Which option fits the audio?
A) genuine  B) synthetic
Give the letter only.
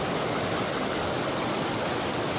A